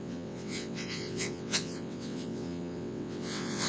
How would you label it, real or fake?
fake